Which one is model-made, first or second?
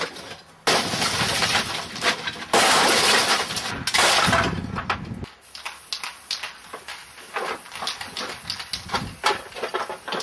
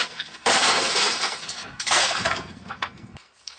second